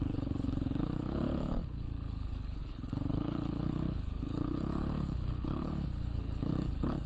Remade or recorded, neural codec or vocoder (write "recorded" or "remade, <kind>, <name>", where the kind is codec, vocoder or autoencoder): remade, codec, HILCodec